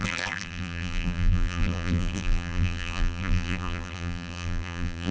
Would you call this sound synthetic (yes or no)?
yes